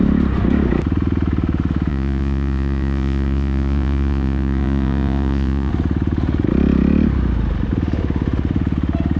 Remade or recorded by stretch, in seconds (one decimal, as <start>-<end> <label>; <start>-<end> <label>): 0.0-1.9 recorded; 1.9-5.7 remade; 5.7-9.2 recorded